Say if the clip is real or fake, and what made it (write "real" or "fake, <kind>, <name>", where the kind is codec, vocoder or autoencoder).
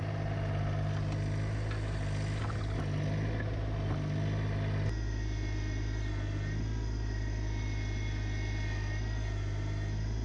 real